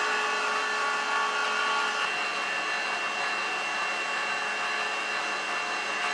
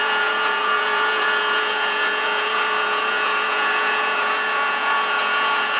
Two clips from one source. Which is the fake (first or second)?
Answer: second